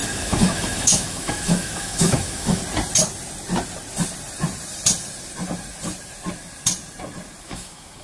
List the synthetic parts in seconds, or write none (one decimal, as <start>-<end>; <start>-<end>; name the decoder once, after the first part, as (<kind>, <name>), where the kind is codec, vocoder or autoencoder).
0.0-2.6 (autoencoder, DAC-VAE); 7.4-8.0